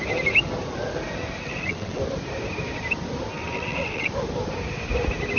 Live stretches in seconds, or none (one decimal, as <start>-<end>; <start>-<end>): 0.0-1.4; 2.0-3.3; 4.1-5.4